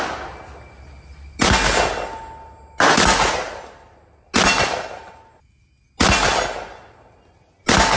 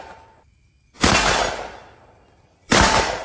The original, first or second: first